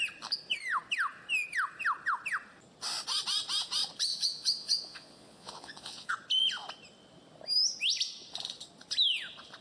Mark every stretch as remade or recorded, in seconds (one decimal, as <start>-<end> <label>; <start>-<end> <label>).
0.0-4.1 recorded; 4.1-6.1 remade; 6.1-9.6 recorded